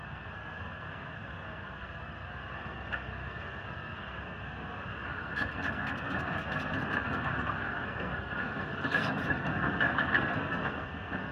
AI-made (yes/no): yes